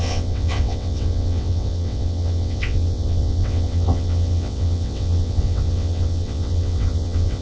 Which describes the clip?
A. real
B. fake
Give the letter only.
B